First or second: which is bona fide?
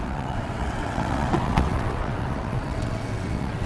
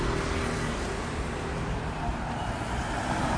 second